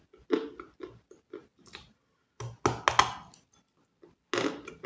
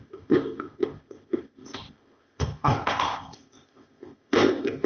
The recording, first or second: first